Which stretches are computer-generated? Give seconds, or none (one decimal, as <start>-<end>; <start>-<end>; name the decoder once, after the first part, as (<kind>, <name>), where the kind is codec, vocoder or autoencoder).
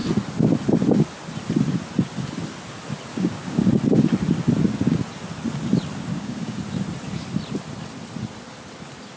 3.1-3.7 (codec, DAC); 6.1-6.6